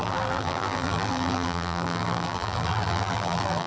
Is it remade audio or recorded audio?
remade